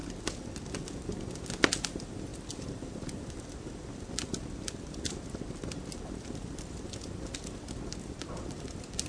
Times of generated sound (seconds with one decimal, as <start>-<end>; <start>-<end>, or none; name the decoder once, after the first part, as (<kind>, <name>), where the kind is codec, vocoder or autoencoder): 2.3-6.9 (vocoder, BigVGAN v2)